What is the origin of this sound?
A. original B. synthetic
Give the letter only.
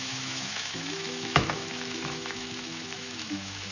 B